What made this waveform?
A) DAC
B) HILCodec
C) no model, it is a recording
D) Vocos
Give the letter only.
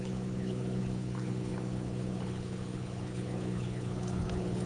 B